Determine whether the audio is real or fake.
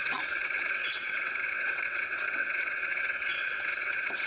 fake